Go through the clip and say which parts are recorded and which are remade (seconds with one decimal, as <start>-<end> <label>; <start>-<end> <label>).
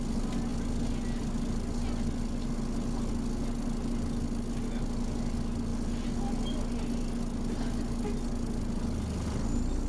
0.0-9.9 recorded